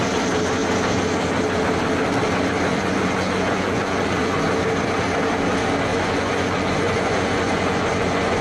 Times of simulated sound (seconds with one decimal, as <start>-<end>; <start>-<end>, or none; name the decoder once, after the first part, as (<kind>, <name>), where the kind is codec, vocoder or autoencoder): 2.7-4.4 (vocoder, Vocos); 5.9-8.4